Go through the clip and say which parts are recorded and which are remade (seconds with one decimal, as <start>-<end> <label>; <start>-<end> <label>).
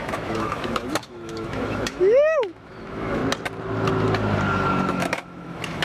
0.0-3.2 remade; 3.2-4.9 recorded; 4.9-5.8 remade